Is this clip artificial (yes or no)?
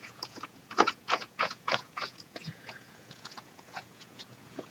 yes